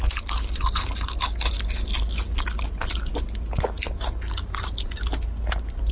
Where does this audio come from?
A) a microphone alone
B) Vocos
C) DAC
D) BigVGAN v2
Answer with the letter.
A